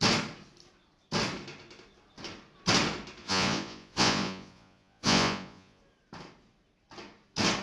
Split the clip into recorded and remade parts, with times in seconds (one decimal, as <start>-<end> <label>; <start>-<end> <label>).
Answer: 0.0-3.2 recorded; 3.2-5.8 remade; 5.8-7.6 recorded